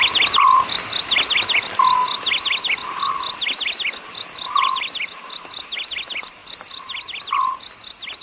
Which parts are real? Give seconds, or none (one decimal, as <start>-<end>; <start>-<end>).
0.0-8.2